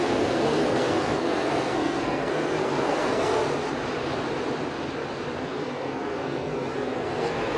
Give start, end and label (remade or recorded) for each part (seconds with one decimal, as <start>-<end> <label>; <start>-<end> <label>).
0.0-3.4 remade; 3.4-5.4 recorded; 5.4-7.6 remade